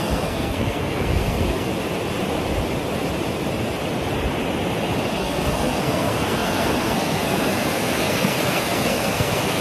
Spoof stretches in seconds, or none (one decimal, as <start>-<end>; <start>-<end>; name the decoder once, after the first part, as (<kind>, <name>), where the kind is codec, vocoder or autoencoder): 0.0-1.7 (codec, SNAC); 5.2-9.6